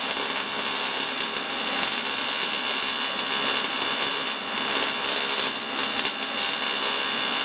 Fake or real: fake